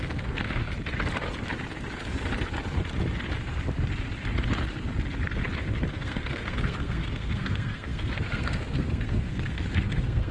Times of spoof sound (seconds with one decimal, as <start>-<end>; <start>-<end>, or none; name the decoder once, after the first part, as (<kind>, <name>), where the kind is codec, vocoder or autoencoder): 0.0-0.6 (codec, SNAC); 5.9-10.3